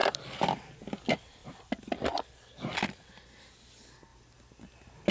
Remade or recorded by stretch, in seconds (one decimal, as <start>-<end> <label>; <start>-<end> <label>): 0.0-0.7 remade; 0.7-1.4 recorded; 1.4-3.2 remade; 3.2-5.1 recorded